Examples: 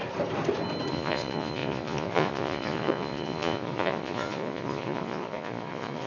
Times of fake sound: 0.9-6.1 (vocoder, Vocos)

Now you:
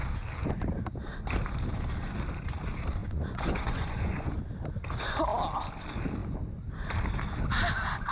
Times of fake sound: 3.0-4.3 (vocoder, Vocos)

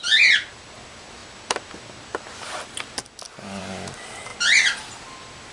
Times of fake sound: none

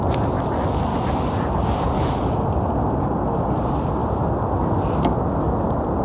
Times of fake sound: none

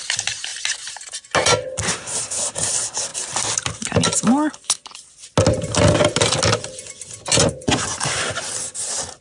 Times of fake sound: 7.4-8.5 (vocoder, Vocos)

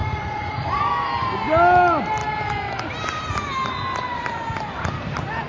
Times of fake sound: 0.0-0.9 (vocoder, Vocos)

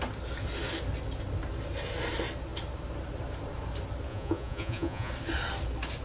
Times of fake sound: 4.1-5.1 (vocoder, Vocos)